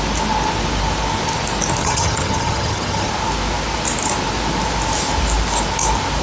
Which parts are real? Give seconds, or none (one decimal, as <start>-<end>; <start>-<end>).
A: 0.0-1.8; 3.1-6.2